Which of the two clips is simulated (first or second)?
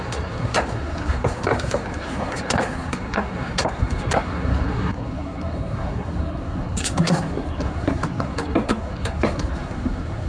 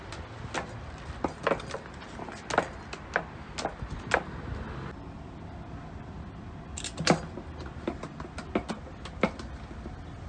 first